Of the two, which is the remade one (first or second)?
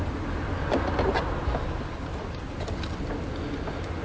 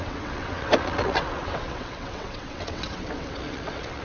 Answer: second